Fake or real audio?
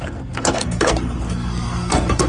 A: fake